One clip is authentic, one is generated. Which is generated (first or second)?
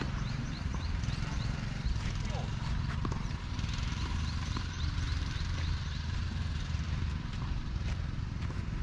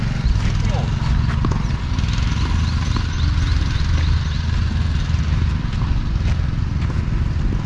first